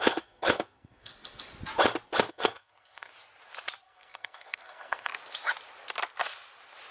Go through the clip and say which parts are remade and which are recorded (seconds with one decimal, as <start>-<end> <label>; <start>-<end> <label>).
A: 0.0-1.1 remade; 1.1-2.3 recorded; 2.3-3.1 remade; 3.1-3.8 recorded; 3.8-5.1 remade; 5.1-6.9 recorded